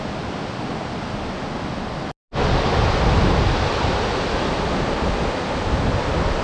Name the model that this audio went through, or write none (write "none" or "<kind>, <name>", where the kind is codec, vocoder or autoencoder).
none